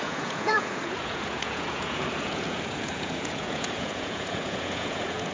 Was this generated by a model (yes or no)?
yes